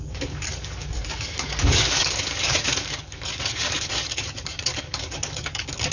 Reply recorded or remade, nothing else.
remade